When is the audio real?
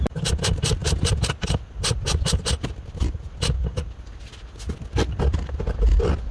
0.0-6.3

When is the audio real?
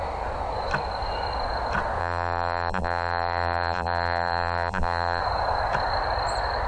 0.0-2.0; 5.2-6.7